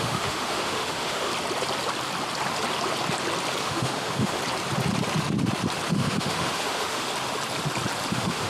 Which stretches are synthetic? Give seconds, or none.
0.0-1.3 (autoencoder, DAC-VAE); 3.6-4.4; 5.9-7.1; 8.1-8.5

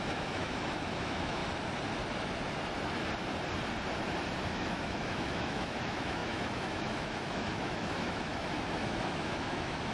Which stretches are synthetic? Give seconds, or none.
0.0-1.4 (autoencoder, DAC-VAE); 4.5-9.9